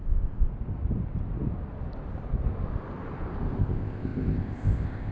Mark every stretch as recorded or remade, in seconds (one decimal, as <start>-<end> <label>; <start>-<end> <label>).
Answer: 0.0-0.5 remade; 0.5-3.6 recorded; 3.6-5.1 remade

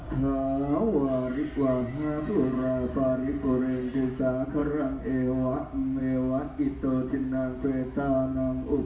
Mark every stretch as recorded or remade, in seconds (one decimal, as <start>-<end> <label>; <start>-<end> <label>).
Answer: 0.0-4.6 recorded; 4.6-6.0 remade; 6.0-8.9 recorded

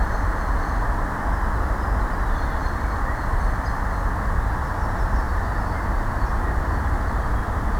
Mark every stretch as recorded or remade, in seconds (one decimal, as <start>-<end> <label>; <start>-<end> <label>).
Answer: 0.0-7.8 recorded

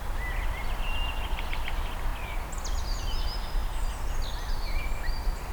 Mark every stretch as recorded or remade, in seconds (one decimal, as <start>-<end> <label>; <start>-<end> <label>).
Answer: 0.0-5.5 recorded

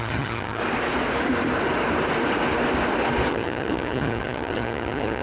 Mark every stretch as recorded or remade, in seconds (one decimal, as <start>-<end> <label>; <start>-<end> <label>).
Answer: 0.0-0.6 remade; 0.6-3.3 recorded; 3.3-5.2 remade

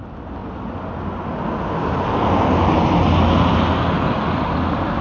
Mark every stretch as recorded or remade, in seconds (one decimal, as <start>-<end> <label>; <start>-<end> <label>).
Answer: 0.0-5.0 recorded